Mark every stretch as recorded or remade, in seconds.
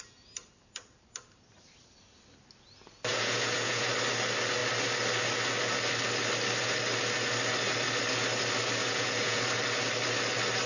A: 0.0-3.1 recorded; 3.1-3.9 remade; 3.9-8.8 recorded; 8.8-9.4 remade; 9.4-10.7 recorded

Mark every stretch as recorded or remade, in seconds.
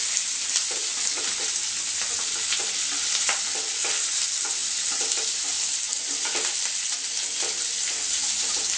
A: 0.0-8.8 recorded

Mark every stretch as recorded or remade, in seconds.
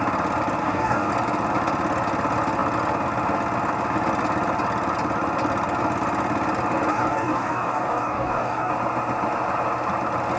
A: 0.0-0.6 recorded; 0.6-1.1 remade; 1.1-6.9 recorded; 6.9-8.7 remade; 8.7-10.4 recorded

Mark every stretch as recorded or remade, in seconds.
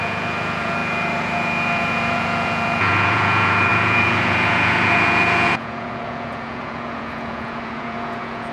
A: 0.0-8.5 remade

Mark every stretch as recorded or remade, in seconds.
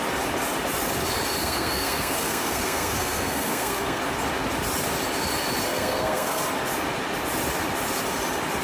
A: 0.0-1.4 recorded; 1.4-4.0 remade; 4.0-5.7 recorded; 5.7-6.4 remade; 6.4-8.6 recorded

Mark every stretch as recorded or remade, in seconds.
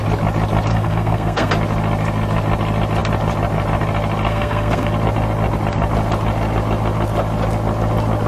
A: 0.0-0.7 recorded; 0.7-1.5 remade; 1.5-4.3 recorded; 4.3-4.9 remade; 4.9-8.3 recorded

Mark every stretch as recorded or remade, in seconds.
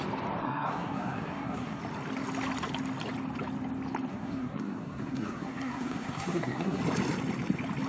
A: 0.0-0.4 recorded; 0.4-1.8 remade; 1.8-4.1 recorded; 4.1-6.8 remade; 6.8-7.9 recorded